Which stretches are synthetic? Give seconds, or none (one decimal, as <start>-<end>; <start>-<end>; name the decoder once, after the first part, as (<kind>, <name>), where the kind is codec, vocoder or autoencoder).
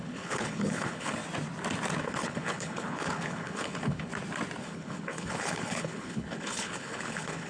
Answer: 0.0-1.2 (codec, HILCodec); 2.0-4.1; 4.6-7.5